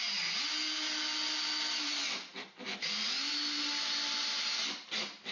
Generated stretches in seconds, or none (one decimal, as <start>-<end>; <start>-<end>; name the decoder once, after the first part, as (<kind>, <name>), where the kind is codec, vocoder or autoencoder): none